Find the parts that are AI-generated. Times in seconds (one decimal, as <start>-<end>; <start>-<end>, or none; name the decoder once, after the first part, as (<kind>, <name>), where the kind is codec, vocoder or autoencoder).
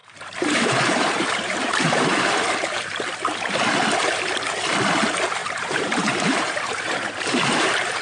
0.0-2.8 (vocoder, BigVGAN v2); 5.4-8.0